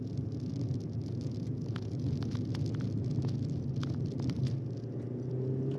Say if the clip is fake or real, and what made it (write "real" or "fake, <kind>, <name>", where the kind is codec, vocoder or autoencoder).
real